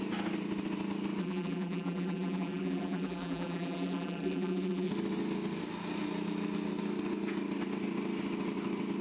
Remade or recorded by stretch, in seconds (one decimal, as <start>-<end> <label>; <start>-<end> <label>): 0.0-1.2 recorded; 1.2-4.9 remade; 4.9-9.0 recorded